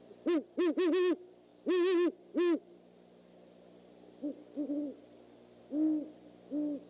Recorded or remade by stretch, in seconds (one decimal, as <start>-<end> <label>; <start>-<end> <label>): 0.0-6.9 recorded